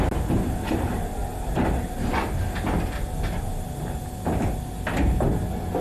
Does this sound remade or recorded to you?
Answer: recorded